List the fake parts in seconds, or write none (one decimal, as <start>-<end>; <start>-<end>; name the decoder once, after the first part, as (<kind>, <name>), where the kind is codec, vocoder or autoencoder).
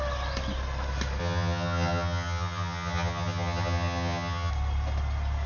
1.2-4.5 (vocoder, HiFi-GAN)